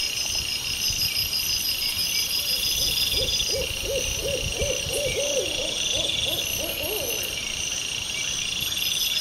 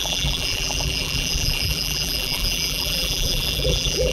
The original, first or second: first